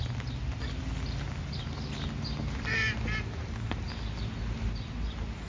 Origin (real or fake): real